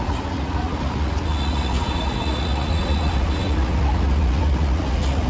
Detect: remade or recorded remade